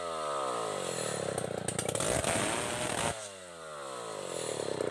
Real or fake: real